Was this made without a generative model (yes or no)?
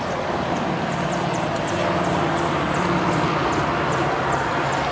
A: yes